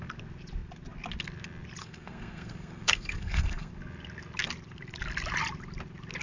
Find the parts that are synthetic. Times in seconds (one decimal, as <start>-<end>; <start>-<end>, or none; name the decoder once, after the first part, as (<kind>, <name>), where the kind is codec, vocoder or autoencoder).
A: 1.8-3.7 (codec, SNAC)